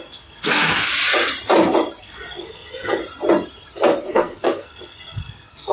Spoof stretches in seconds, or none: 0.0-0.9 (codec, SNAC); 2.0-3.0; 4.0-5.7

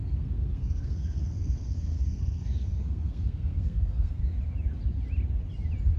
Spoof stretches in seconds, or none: 0.0-4.2 (codec, SNAC)